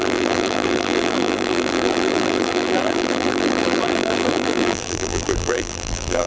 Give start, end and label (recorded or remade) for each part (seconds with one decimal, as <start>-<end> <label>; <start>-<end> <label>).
0.0-6.3 remade

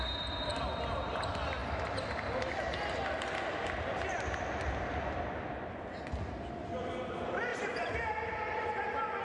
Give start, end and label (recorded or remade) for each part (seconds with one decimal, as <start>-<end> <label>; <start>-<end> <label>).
0.0-7.5 recorded; 7.5-8.4 remade; 8.4-9.2 recorded